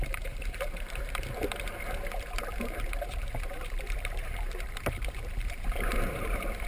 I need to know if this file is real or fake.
fake